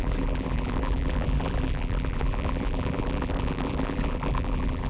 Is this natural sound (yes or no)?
no